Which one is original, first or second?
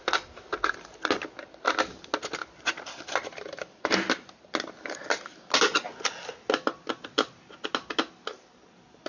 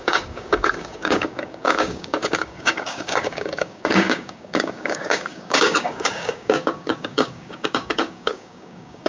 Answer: first